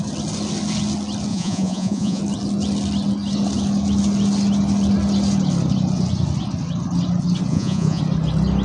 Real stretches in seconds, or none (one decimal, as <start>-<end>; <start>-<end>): 0.0-1.3; 2.2-7.5; 8.0-8.6